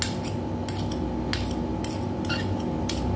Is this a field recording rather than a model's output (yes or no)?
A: yes